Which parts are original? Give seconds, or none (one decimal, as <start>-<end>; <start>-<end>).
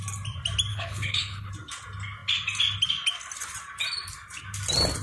0.0-0.7; 1.5-5.0